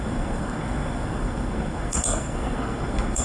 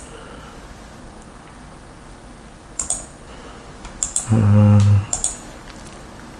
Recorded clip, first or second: second